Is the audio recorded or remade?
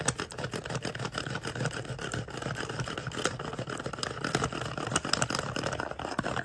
recorded